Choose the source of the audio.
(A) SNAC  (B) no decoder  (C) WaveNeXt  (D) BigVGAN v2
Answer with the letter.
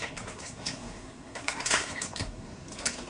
A